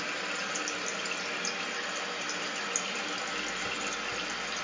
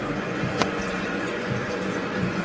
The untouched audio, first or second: first